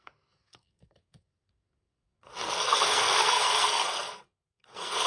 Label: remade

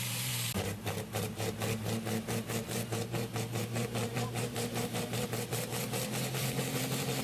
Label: remade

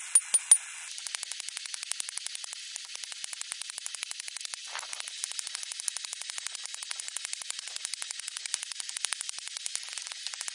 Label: recorded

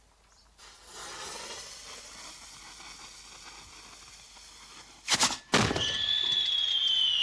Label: recorded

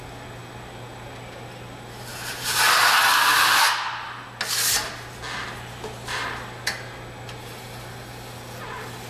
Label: recorded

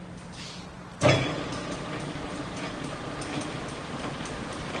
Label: recorded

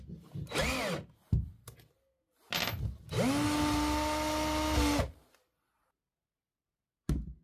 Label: recorded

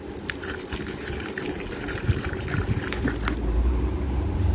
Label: remade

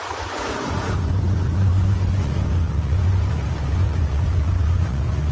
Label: remade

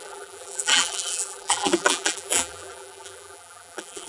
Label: remade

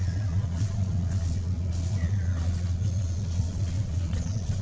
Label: remade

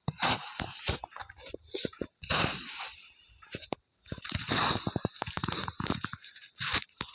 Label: remade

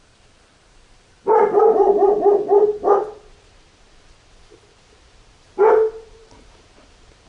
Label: remade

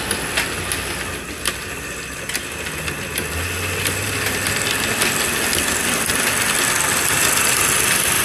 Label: recorded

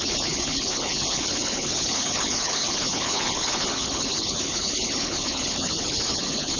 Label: remade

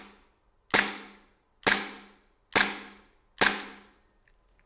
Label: recorded